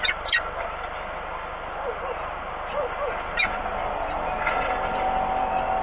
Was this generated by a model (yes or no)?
no